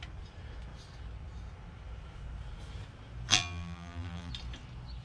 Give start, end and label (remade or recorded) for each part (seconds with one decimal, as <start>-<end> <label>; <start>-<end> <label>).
0.0-3.3 recorded; 3.3-4.3 remade; 4.3-5.0 recorded